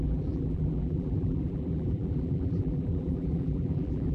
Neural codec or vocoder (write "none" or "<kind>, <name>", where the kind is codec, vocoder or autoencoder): vocoder, BigVGAN v2